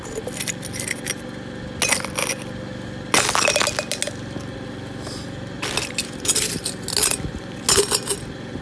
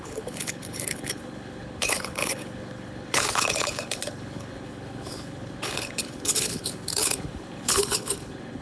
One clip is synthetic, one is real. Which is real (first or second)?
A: first